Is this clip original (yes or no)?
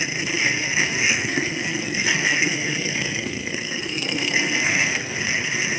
no